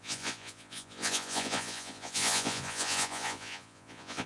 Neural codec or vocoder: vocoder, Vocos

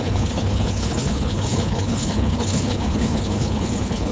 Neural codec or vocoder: codec, HILCodec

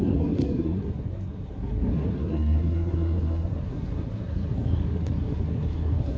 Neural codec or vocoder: codec, SNAC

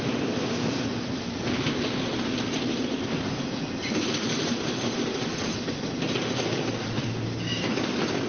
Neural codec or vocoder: none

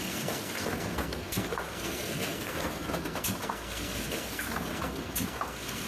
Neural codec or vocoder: codec, SNAC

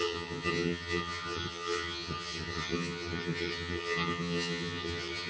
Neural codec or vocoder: vocoder, HiFi-GAN